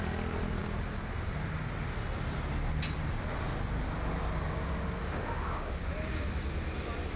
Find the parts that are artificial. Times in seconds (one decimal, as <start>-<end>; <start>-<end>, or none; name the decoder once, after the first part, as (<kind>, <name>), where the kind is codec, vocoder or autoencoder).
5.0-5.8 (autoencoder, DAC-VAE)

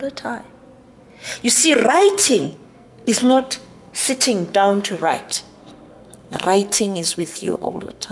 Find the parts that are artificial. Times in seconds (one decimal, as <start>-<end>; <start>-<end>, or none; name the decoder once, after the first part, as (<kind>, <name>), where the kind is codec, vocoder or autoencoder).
1.6-3.9 (codec, SNAC); 4.5-8.1

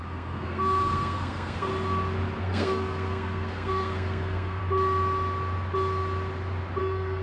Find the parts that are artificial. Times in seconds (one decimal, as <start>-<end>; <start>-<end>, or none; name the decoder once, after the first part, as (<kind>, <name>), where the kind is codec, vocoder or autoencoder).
0.0-1.7 (codec, SNAC); 2.4-4.6; 6.8-7.2